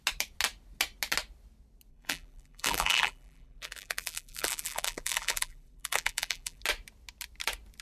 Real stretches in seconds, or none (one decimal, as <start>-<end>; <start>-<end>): 0.0-1.9; 6.6-7.8